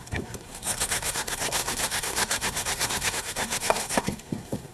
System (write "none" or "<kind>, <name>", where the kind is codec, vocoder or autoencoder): codec, SNAC